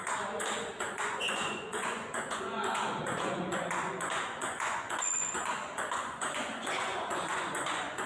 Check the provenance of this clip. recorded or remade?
remade